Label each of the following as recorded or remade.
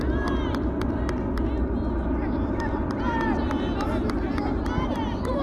recorded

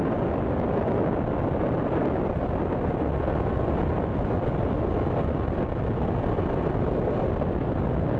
recorded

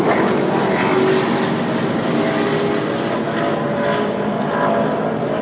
recorded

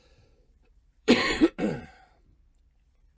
remade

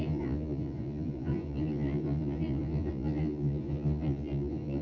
remade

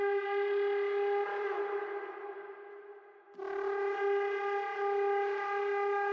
recorded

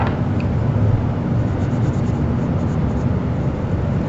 recorded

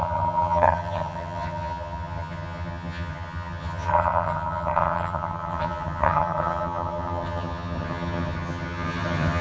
remade